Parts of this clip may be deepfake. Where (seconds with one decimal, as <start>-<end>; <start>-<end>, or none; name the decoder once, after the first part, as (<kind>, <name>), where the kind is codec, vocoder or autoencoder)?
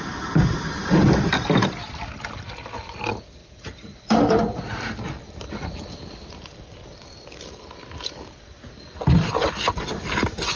0.8-1.7 (vocoder, BigVGAN v2); 3.4-4.7